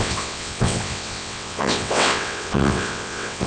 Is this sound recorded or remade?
remade